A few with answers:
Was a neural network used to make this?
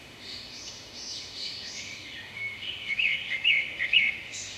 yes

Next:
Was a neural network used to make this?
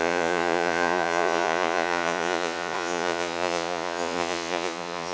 yes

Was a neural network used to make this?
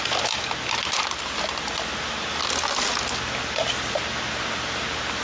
no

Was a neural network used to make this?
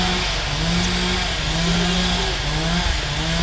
no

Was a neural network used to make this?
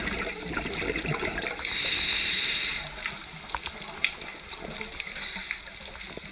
no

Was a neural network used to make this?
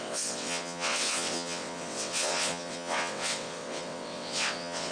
yes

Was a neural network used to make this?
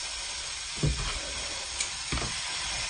no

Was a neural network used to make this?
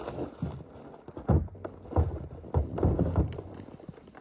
no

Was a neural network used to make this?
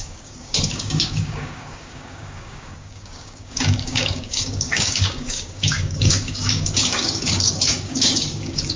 yes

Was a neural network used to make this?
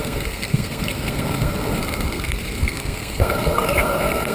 yes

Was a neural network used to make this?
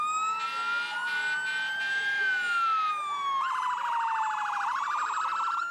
no